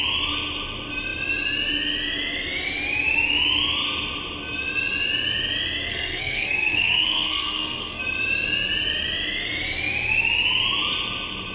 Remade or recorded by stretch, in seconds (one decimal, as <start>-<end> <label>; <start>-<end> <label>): 0.0-5.9 recorded; 5.9-8.0 remade; 8.0-11.5 recorded